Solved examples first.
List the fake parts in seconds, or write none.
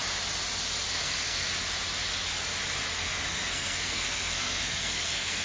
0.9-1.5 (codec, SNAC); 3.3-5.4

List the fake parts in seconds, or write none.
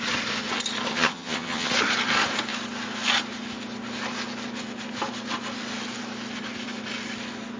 0.9-1.7 (vocoder, HiFi-GAN)